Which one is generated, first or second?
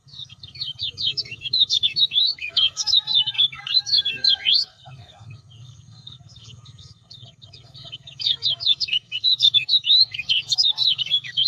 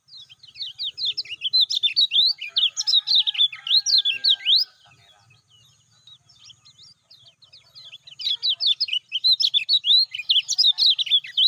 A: first